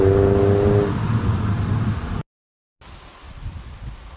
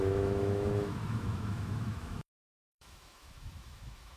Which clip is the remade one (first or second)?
second